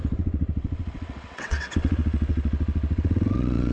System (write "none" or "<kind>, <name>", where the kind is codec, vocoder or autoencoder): vocoder, WaveNeXt